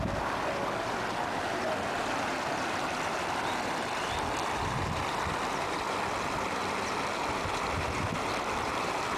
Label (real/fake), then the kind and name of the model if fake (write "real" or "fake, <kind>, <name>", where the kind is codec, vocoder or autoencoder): real